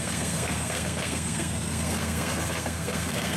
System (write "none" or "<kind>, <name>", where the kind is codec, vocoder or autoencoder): codec, SNAC